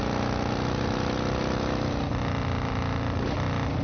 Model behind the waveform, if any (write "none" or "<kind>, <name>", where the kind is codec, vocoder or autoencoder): none